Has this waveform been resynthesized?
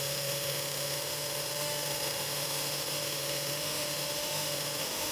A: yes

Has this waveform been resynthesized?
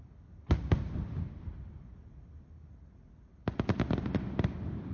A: no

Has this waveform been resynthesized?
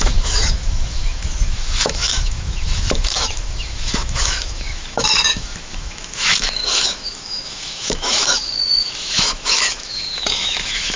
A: yes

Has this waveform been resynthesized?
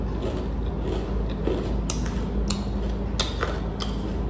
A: no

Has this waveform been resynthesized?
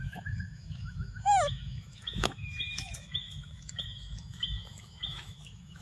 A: yes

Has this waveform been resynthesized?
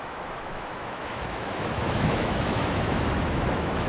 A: yes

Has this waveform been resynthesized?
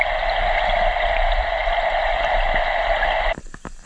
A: no